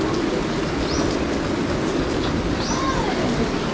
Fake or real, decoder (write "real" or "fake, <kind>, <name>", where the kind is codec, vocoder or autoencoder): real